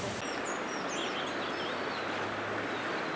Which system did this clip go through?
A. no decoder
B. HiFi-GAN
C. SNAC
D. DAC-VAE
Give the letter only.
A